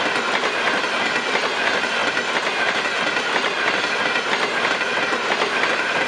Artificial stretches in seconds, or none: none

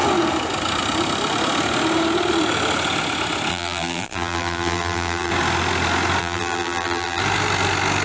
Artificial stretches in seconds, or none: 3.5-5.3 (vocoder, BigVGAN v2); 6.2-7.2

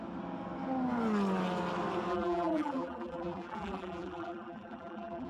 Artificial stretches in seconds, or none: 2.1-5.3 (vocoder, BigVGAN v2)

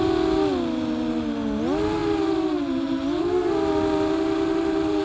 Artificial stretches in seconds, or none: none

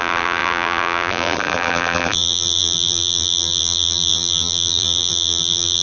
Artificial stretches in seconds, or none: 0.0-5.8 (vocoder, BigVGAN v2)

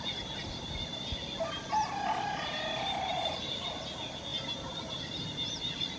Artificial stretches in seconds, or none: 4.3-5.0 (vocoder, BigVGAN v2)

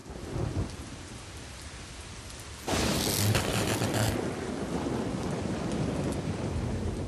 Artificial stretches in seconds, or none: none

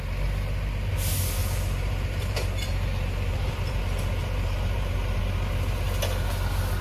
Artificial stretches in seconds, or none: 1.4-3.8 (vocoder, BigVGAN v2); 4.2-5.2